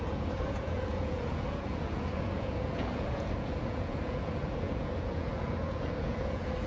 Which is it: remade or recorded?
remade